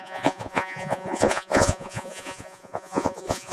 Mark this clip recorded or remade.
remade